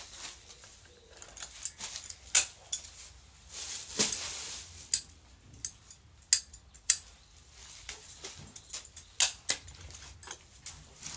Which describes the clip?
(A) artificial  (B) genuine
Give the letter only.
B